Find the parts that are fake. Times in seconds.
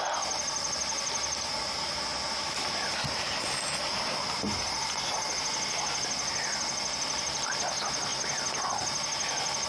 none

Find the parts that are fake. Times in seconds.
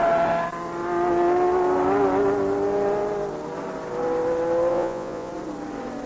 4.7-5.3 (vocoder, Vocos)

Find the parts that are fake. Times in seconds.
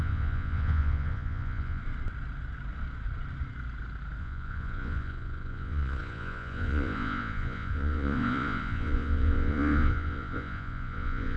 0.0-1.8 (vocoder, Vocos); 4.2-11.4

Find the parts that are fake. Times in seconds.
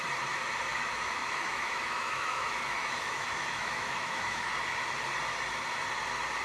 0.7-4.5 (autoencoder, DAC-VAE)